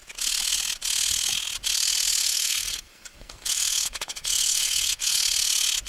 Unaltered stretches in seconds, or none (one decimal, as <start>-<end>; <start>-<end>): 0.0-2.2; 5.2-5.9